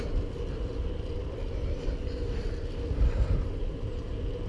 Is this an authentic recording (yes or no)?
yes